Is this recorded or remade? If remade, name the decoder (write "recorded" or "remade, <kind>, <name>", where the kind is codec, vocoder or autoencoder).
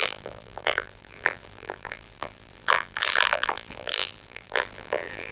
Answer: remade, vocoder, BigVGAN v2